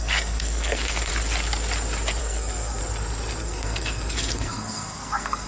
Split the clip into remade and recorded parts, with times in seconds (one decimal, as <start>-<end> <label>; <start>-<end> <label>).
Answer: 0.0-1.1 remade; 1.1-2.2 recorded; 2.2-2.8 remade; 2.8-3.4 recorded; 3.4-5.5 remade